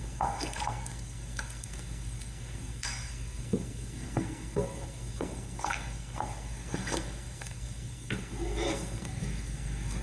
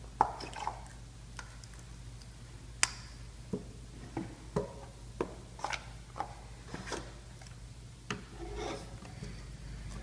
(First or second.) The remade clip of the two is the first